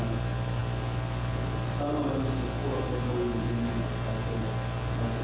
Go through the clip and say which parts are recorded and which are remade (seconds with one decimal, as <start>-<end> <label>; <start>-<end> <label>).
0.0-5.2 recorded